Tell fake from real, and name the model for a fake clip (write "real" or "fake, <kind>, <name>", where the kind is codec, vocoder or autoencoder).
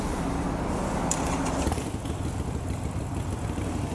fake, vocoder, BigVGAN v2